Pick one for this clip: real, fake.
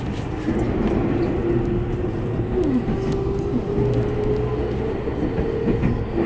real